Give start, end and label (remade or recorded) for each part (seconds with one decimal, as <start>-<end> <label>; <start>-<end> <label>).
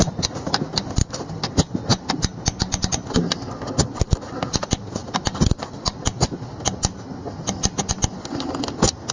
0.0-9.1 recorded